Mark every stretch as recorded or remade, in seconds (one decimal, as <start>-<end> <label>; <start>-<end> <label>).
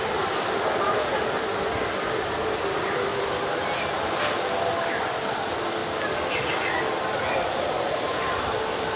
0.0-9.0 recorded